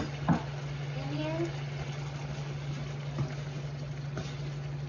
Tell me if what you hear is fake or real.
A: real